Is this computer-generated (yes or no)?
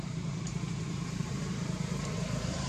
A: yes